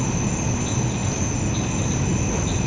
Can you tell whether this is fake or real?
real